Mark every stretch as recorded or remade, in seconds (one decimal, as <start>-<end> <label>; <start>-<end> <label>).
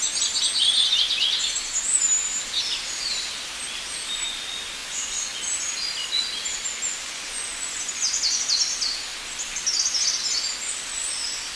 0.0-4.8 recorded; 4.8-5.4 remade; 5.4-6.9 recorded; 6.9-8.4 remade; 8.4-11.6 recorded